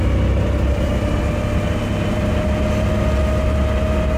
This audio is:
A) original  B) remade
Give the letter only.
A